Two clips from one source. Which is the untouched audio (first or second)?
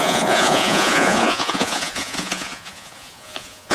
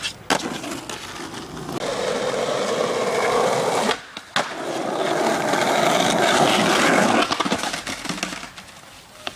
second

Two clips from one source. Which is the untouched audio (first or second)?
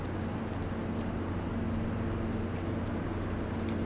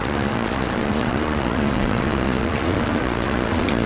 first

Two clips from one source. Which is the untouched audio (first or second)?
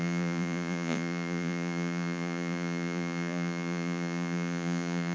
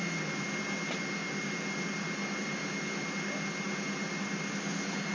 second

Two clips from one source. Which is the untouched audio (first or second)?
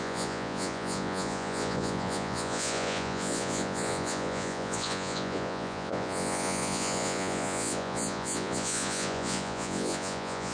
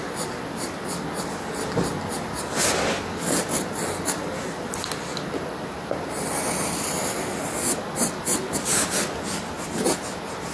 second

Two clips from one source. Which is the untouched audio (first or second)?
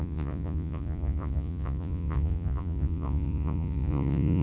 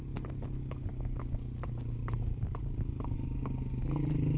second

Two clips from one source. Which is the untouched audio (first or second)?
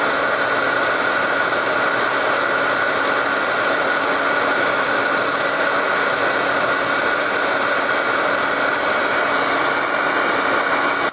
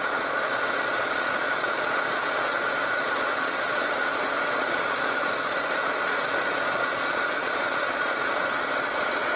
first